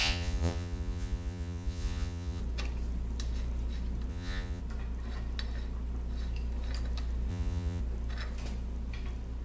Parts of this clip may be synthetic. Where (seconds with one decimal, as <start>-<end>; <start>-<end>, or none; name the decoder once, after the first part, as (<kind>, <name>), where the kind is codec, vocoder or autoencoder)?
0.0-2.4 (vocoder, Vocos); 4.1-4.6; 7.3-7.8